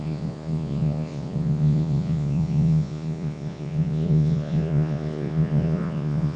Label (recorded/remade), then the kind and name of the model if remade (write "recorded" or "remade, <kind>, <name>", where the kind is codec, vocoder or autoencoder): remade, vocoder, Vocos